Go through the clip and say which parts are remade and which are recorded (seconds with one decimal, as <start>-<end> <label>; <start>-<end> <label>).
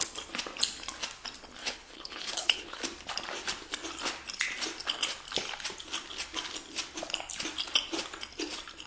0.0-1.6 recorded; 1.6-2.8 remade; 2.8-8.9 recorded